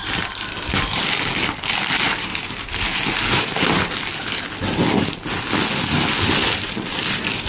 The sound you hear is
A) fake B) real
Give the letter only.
B